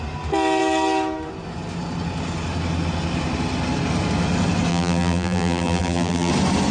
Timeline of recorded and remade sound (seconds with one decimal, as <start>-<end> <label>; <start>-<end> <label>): 0.0-4.7 recorded; 4.7-6.3 remade; 6.3-6.7 recorded